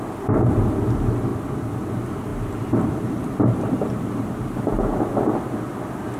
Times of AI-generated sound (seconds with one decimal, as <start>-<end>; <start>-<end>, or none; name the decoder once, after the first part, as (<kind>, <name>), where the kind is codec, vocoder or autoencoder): 2.3-4.8 (vocoder, BigVGAN v2)